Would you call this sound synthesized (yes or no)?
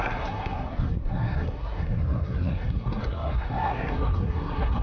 yes